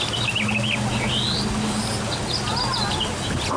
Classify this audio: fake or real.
real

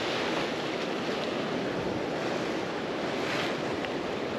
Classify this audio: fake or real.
real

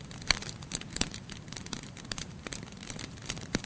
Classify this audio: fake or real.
fake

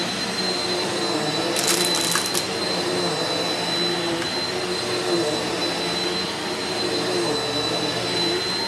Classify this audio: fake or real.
real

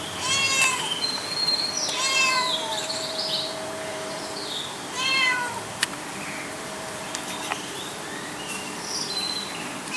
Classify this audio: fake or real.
fake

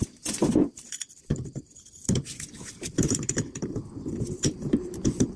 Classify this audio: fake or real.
fake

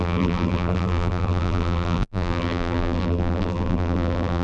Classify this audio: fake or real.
fake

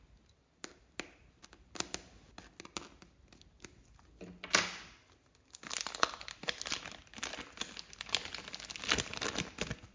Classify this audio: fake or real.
real